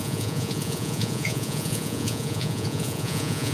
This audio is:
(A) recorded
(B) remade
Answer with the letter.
B